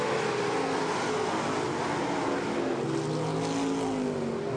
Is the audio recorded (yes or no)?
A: yes